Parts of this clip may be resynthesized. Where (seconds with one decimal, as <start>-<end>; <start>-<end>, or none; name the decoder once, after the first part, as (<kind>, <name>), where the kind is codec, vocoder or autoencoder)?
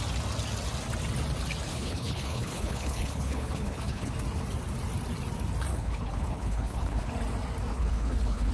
1.7-4.1 (codec, HILCodec); 5.7-7.1; 7.7-8.5